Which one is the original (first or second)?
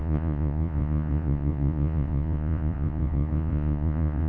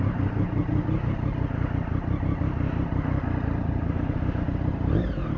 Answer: second